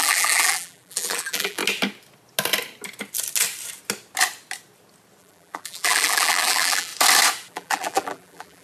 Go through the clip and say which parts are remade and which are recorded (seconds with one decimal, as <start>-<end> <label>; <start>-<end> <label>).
0.0-1.6 remade; 1.6-5.2 recorded; 5.2-6.9 remade; 6.9-7.5 recorded; 7.5-8.6 remade